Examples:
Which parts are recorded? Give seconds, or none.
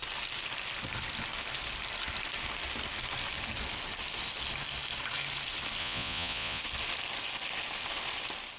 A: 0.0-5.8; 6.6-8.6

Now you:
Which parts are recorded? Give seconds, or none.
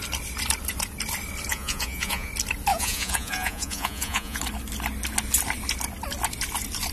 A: 0.0-1.5; 2.3-2.7; 4.4-6.9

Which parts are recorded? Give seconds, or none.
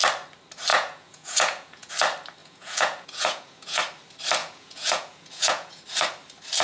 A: 0.0-0.7; 1.9-2.4; 3.8-4.4; 5.8-6.6